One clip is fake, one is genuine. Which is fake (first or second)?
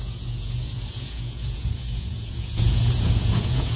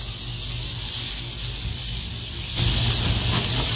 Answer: first